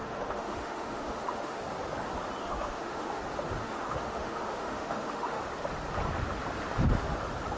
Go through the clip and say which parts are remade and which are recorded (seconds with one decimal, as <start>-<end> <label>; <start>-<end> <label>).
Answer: 0.0-1.6 remade; 1.6-2.4 recorded; 2.4-3.2 remade; 3.2-3.6 recorded; 3.6-5.4 remade; 5.4-7.6 recorded